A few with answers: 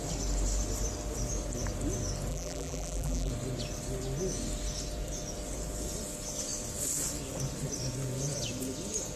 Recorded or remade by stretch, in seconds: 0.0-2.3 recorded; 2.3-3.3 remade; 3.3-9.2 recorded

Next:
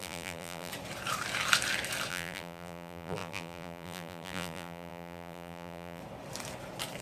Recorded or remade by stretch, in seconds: 0.0-0.7 remade; 0.7-2.1 recorded; 2.1-6.0 remade; 6.0-7.0 recorded

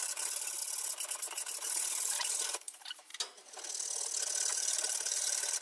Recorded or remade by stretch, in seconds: 0.0-0.6 remade; 0.6-1.2 recorded; 1.2-3.1 remade; 3.1-4.5 recorded; 4.5-5.6 remade